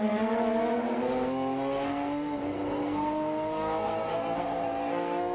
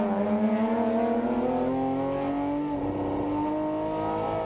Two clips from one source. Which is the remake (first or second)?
first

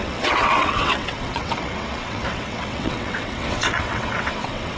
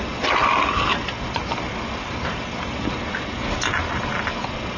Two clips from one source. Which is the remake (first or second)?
first